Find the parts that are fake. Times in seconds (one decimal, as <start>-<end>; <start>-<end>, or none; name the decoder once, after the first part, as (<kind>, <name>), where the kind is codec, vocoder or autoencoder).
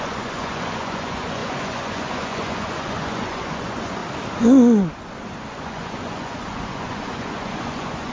0.0-4.0 (vocoder, Vocos); 5.5-8.1